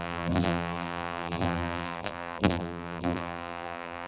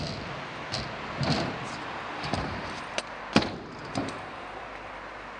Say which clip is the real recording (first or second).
second